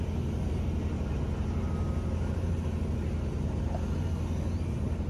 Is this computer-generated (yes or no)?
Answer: no